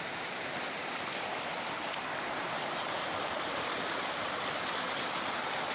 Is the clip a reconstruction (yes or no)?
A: no